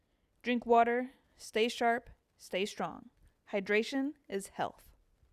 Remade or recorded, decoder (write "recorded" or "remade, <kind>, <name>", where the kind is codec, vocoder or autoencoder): recorded